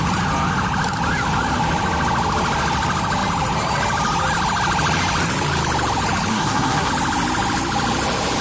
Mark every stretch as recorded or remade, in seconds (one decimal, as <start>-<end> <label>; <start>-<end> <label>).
0.0-6.3 recorded; 6.3-6.9 remade; 6.9-8.4 recorded